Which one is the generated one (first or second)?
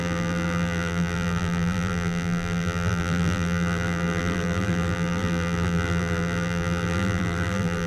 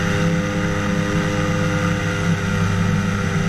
first